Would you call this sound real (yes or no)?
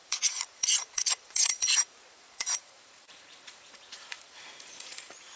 no